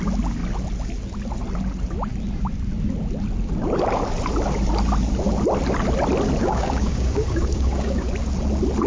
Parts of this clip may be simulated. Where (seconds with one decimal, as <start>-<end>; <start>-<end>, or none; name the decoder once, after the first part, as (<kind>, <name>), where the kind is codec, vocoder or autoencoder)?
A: 6.4-8.1 (codec, DAC)